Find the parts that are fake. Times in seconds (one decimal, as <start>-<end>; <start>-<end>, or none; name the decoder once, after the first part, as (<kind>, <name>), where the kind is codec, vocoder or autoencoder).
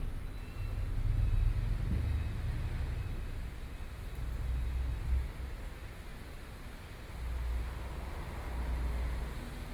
none